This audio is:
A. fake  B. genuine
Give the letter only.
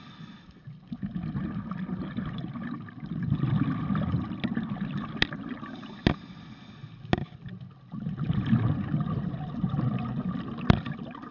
B